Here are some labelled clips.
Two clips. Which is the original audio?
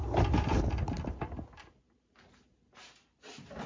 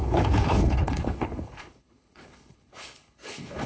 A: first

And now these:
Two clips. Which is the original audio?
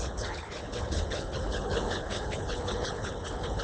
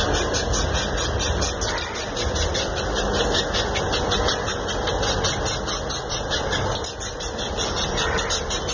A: second